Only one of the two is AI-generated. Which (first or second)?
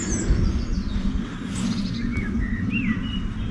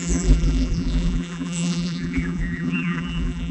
second